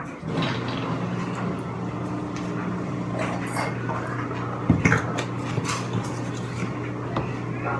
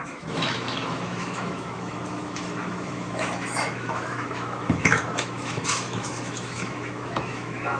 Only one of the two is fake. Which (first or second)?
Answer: second